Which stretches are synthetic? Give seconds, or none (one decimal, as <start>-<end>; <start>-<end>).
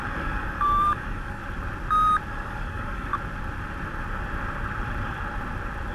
0.0-1.4; 2.3-3.1